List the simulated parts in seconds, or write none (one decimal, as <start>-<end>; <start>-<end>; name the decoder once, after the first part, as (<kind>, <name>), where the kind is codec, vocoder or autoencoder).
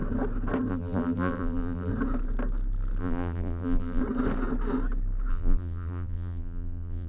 0.7-1.9 (vocoder, BigVGAN v2); 3.0-4.0; 5.3-7.1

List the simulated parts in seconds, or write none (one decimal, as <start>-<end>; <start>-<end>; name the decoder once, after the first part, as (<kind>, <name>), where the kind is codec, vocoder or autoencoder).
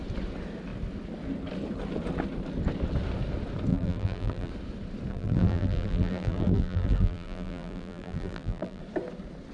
3.7-4.5 (vocoder, BigVGAN v2); 5.1-8.8